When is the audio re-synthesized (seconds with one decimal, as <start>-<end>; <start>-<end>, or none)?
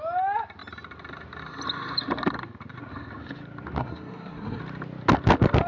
3.8-4.6